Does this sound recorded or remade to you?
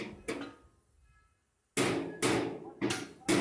recorded